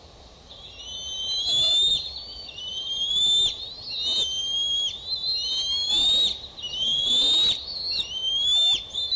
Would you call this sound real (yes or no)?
yes